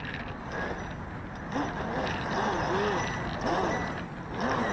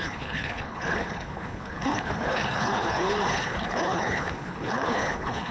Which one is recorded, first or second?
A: first